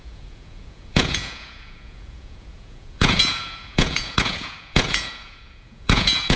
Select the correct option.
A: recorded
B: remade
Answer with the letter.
B